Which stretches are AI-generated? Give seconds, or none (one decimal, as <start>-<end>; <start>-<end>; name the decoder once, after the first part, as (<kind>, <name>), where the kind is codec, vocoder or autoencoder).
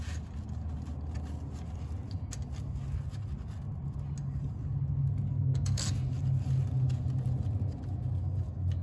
5.3-5.9 (codec, SNAC)